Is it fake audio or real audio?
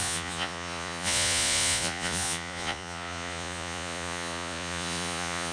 fake